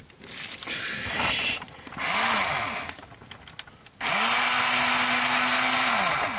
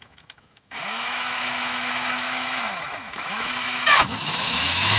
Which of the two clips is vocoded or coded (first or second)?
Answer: second